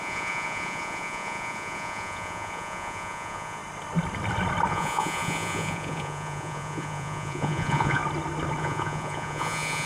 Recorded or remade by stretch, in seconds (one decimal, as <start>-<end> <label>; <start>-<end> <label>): 0.0-3.6 remade; 3.6-4.7 recorded; 4.7-8.0 remade; 8.0-8.6 recorded; 8.6-9.9 remade